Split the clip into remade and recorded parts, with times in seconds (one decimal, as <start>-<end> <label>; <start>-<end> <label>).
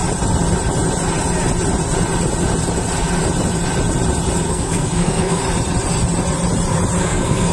0.0-4.5 recorded; 4.5-5.4 remade; 5.4-7.0 recorded; 7.0-7.5 remade